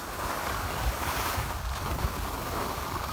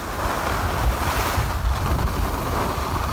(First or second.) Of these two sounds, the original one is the second